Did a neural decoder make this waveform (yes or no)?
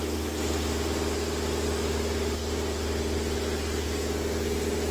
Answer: no